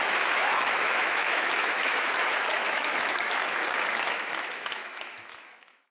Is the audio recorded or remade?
remade